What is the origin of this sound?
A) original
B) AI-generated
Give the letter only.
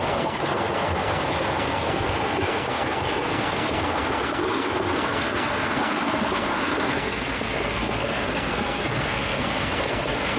B